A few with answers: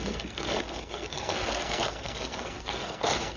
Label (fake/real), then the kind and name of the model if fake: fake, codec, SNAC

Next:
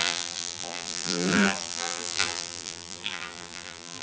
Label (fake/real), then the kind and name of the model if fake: fake, vocoder, BigVGAN v2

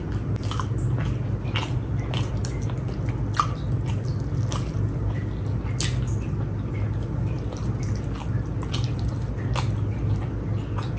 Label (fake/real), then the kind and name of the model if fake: real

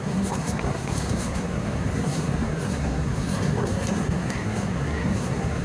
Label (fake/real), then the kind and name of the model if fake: fake, codec, SNAC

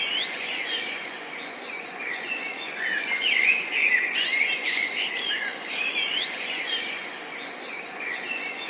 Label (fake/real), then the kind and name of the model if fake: fake, vocoder, Vocos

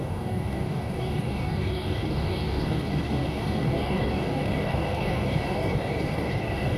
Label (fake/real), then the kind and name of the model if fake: fake, codec, DAC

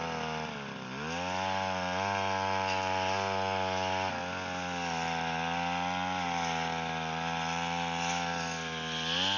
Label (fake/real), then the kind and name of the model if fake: real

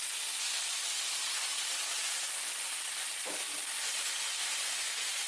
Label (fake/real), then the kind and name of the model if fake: real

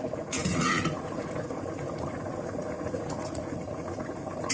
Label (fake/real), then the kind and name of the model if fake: fake, vocoder, Vocos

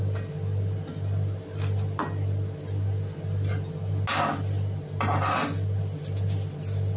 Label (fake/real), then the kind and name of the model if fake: real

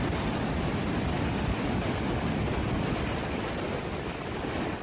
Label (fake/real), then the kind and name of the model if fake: real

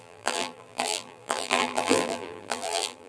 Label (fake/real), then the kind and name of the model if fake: fake, vocoder, BigVGAN v2